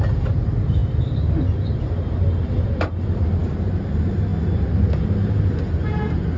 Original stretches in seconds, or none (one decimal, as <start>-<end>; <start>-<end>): 0.0-4.3; 5.4-6.4